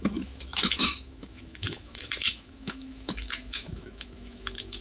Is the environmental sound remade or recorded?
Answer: remade